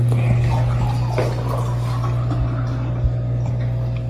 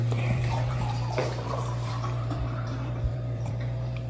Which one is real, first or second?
first